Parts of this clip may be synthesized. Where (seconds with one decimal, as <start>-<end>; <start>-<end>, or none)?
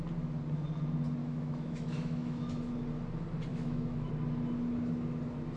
1.2-2.7; 3.5-4.1